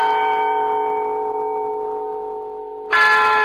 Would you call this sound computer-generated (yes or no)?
no